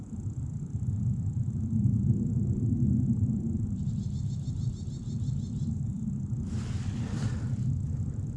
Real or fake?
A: real